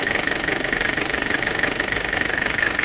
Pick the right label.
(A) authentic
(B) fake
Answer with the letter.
B